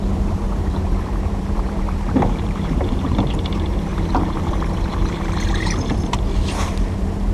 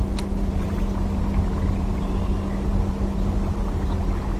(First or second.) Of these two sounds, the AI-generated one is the first